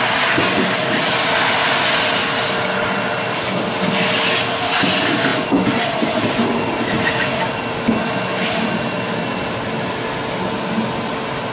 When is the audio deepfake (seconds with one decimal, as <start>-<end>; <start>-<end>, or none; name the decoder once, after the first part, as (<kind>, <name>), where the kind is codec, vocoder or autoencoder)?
none